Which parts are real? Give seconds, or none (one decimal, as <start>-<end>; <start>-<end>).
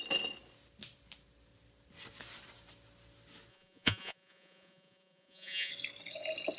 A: 0.0-3.5; 5.7-6.6